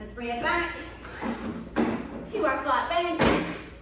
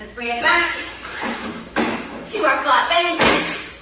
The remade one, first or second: second